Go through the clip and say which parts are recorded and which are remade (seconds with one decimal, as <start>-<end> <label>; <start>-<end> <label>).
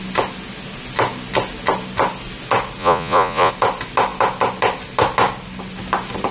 0.0-2.8 recorded; 2.8-3.5 remade; 3.5-6.3 recorded